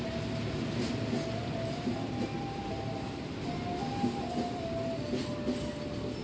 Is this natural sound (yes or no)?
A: yes